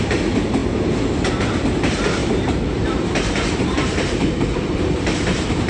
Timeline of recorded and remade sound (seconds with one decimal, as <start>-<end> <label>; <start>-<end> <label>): 0.0-2.2 recorded; 2.2-5.7 remade